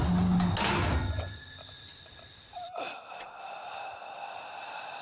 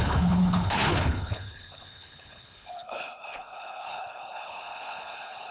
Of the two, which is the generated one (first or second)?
second